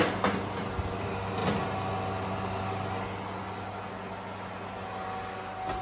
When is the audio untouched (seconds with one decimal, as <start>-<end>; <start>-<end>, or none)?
0.0-5.8

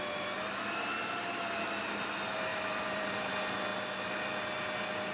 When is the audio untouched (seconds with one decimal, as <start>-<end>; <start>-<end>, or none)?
0.0-2.5; 3.3-5.1